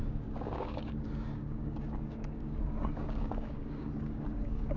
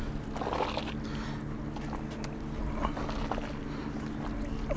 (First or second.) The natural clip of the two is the second